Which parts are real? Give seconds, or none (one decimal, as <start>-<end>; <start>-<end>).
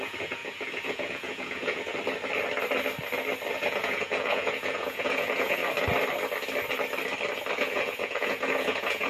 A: 1.9-3.5; 5.6-7.5